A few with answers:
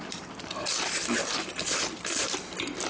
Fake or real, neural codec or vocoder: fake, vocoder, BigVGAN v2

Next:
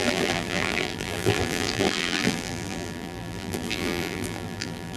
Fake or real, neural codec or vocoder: fake, vocoder, BigVGAN v2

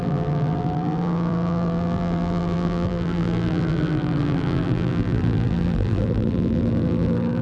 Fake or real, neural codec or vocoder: fake, vocoder, BigVGAN v2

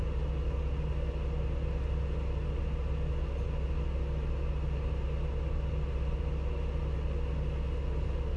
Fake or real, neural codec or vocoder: real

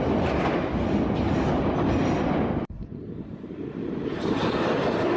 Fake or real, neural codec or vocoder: real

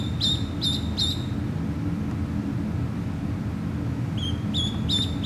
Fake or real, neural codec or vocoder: real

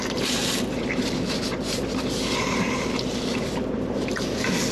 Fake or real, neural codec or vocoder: real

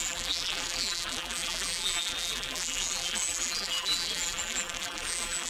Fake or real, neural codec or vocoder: fake, vocoder, BigVGAN v2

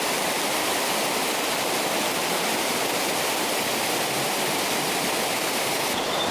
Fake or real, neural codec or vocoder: fake, vocoder, BigVGAN v2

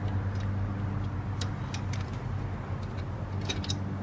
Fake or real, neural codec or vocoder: real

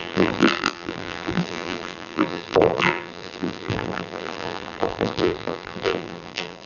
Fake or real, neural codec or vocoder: fake, vocoder, BigVGAN v2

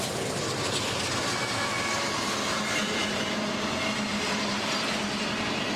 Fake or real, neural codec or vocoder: real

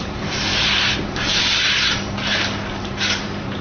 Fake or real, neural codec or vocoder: fake, vocoder, BigVGAN v2